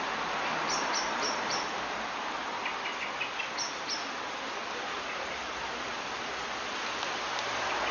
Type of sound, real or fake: real